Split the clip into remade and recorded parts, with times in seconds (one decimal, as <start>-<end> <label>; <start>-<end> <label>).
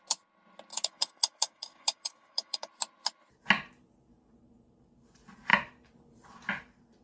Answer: 0.0-0.7 recorded; 0.7-2.7 remade; 2.7-7.0 recorded